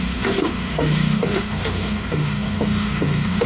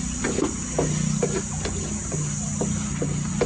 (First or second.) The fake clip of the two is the first